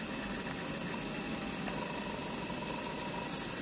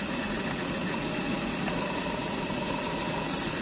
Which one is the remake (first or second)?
second